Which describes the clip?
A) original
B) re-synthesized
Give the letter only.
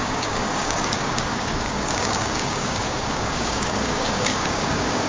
B